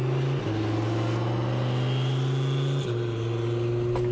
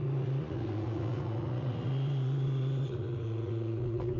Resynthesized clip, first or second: second